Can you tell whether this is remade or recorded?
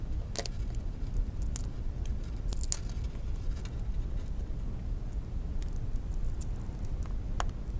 recorded